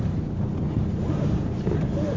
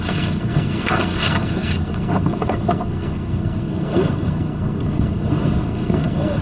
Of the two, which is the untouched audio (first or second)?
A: first